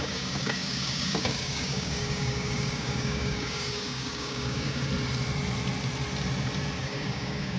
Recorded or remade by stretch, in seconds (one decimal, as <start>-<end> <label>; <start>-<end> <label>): 0.0-4.9 remade; 4.9-6.8 recorded; 6.8-7.6 remade

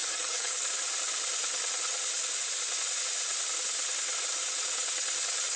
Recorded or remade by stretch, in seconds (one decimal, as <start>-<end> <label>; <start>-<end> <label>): 0.0-0.7 remade; 0.7-5.6 recorded

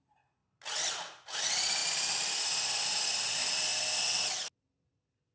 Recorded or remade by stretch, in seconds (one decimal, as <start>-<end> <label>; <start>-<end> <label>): 0.0-5.3 recorded

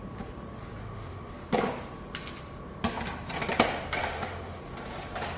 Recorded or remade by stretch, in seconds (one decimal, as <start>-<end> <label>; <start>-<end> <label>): 0.0-0.8 recorded; 0.8-1.3 remade; 1.3-4.0 recorded; 4.0-4.6 remade; 4.6-5.4 recorded

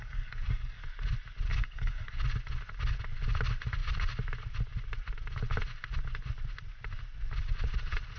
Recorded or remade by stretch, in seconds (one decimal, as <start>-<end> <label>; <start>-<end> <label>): 0.0-0.8 remade; 0.8-1.5 recorded; 1.5-2.2 remade; 2.2-8.2 recorded

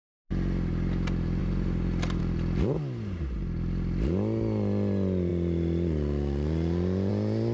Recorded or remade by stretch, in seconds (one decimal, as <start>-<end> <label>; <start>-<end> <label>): 0.0-1.4 recorded; 1.4-2.2 remade; 2.2-7.5 recorded